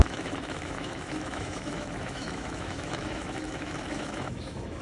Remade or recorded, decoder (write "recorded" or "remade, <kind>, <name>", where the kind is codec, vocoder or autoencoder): remade, autoencoder, DAC-VAE